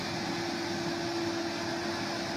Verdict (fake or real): real